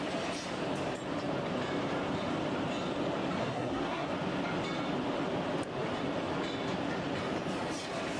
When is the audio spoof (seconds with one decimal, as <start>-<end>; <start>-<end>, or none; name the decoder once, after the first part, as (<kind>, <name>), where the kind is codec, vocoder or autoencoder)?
3.4-4.1 (codec, SNAC)